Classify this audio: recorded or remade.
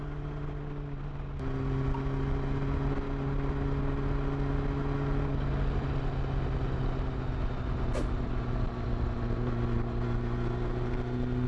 recorded